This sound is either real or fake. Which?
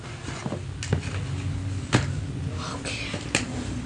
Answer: real